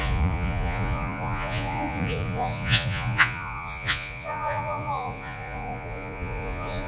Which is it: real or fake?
fake